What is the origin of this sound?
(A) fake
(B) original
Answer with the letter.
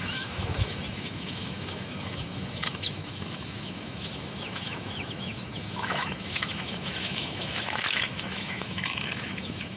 A